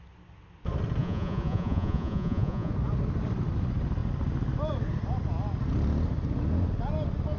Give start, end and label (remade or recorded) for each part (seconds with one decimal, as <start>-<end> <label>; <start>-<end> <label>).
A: 0.0-1.0 recorded; 1.0-2.7 remade; 2.7-7.4 recorded